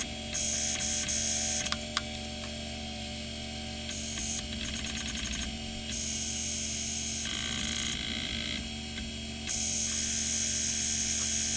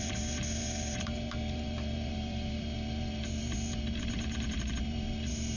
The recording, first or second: first